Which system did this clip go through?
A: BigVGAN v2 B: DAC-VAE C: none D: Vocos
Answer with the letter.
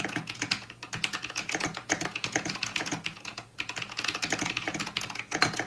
D